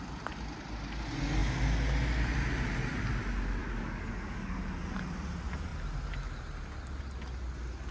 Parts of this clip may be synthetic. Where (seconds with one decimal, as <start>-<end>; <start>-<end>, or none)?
3.6-4.6